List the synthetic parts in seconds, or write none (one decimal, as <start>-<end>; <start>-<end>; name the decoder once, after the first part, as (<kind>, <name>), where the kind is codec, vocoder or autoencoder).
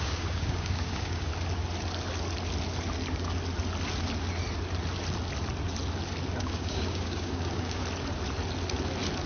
0.0-1.3 (codec, DAC); 6.4-7.8